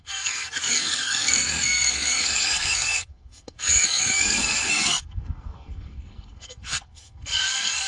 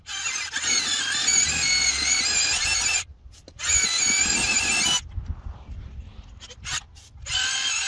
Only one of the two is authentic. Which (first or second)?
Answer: second